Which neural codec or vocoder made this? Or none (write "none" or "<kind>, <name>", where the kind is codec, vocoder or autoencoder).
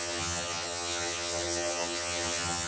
vocoder, HiFi-GAN